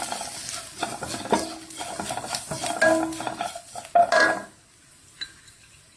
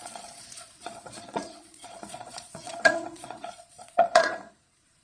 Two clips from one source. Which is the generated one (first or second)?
second